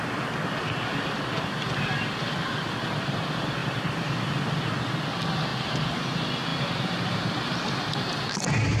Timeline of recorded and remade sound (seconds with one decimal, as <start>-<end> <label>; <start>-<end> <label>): 0.0-0.9 recorded; 0.9-3.2 remade; 3.2-3.6 recorded; 3.6-4.6 remade; 4.6-5.5 recorded; 5.5-6.0 remade; 6.0-8.8 recorded